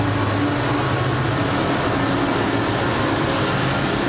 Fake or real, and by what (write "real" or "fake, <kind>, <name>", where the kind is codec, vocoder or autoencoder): real